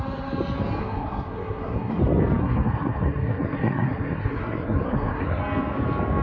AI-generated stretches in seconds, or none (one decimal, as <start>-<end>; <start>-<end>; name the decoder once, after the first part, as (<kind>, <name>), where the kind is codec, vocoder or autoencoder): 0.8-2.0 (codec, SNAC); 2.4-5.4

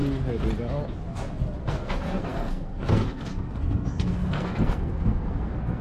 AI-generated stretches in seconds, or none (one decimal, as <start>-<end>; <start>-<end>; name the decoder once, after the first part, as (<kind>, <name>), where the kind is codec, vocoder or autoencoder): 1.6-5.8 (codec, SNAC)

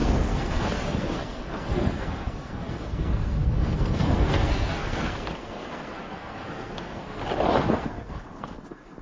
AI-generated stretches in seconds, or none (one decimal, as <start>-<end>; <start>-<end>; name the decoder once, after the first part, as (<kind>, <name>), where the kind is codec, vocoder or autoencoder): 0.0-7.2 (codec, SNAC); 7.7-9.0

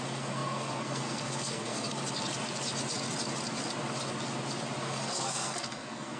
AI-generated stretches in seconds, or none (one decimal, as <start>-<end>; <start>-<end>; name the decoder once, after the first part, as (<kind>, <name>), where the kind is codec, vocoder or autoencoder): 0.0-2.0 (codec, SNAC); 4.8-6.2

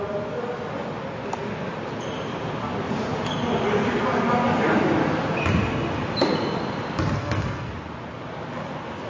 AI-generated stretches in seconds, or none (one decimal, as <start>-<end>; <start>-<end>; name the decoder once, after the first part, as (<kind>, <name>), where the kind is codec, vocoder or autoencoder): 7.2-7.7 (codec, SNAC)